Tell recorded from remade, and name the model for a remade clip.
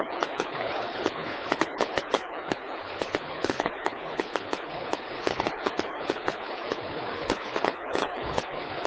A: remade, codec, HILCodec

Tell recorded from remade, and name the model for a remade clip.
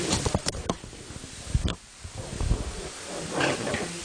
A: recorded